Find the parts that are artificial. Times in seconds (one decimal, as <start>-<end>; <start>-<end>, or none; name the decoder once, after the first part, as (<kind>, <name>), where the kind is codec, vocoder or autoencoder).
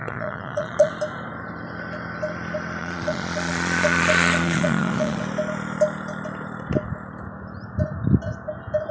0.0-0.9 (vocoder, Vocos); 2.8-5.2